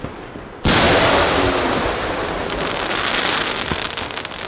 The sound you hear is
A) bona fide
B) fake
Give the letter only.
B